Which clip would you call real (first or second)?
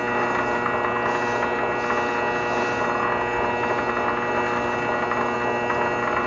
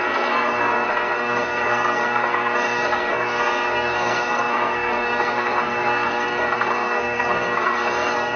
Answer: first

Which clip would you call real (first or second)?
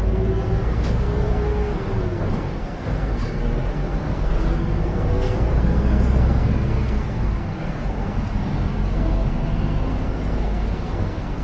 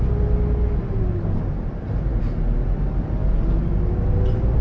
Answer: second